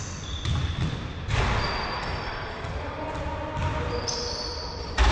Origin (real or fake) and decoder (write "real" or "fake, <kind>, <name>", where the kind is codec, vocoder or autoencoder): real